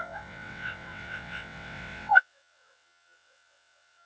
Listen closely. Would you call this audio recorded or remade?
remade